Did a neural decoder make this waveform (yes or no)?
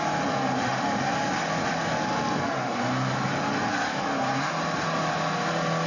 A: no